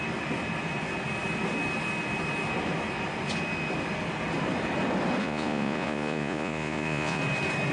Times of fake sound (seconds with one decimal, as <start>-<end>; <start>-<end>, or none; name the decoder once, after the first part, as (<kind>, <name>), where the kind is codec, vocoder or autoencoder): 5.2-7.2 (vocoder, Vocos)